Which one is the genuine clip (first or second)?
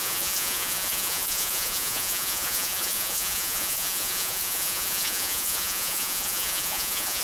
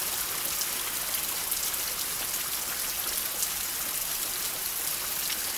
second